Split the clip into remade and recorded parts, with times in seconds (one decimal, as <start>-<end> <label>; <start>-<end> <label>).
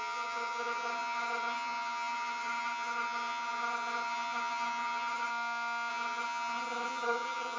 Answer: 0.0-5.3 remade; 5.3-5.9 recorded; 5.9-7.6 remade